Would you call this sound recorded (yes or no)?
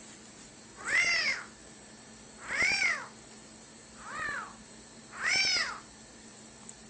yes